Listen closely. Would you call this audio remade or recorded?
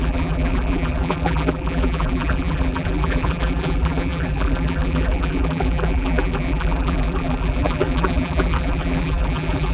remade